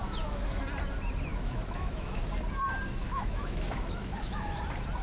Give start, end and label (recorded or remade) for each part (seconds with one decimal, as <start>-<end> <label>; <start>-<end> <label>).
0.0-0.6 remade; 0.6-1.3 recorded; 1.3-2.2 remade; 2.2-3.0 recorded; 3.0-4.6 remade; 4.6-5.0 recorded